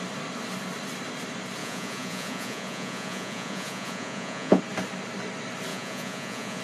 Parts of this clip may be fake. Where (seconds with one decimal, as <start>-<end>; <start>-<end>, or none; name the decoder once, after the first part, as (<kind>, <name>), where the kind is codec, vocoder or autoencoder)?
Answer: 1.6-4.6 (vocoder, Vocos); 5.7-6.6